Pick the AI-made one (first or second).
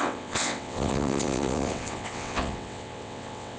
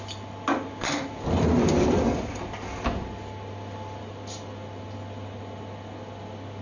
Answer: first